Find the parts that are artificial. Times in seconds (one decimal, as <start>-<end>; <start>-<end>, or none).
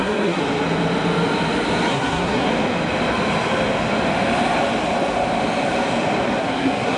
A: 0.0-0.4; 1.9-2.5; 6.4-7.0